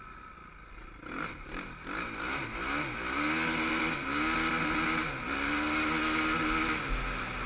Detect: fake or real real